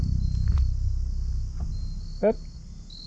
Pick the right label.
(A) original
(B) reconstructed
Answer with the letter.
A